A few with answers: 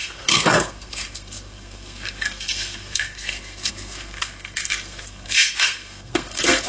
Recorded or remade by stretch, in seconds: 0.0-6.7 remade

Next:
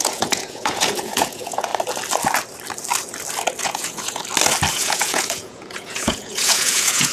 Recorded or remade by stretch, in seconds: 0.0-1.7 remade; 1.7-3.6 recorded; 3.6-4.2 remade; 4.2-4.7 recorded; 4.7-7.1 remade

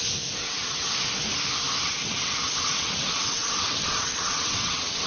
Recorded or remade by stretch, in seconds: 0.0-0.4 recorded; 0.4-0.9 remade; 0.9-1.8 recorded; 1.8-5.1 remade

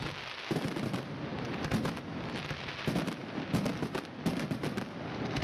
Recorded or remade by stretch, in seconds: 0.0-5.4 recorded

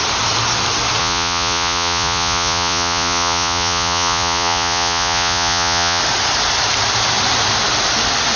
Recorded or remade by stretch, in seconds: 0.0-1.0 recorded; 1.0-6.0 remade; 6.0-8.4 recorded

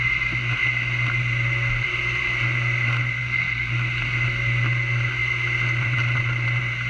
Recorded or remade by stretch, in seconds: 0.0-3.2 recorded; 3.2-3.7 remade; 3.7-6.9 recorded

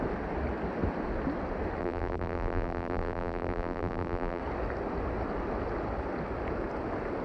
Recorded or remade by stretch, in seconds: 0.0-1.8 recorded; 1.8-4.4 remade; 4.4-7.2 recorded